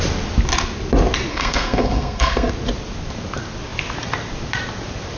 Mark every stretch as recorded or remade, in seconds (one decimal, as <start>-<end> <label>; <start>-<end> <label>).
0.0-1.3 recorded; 1.3-2.5 remade; 2.5-5.2 recorded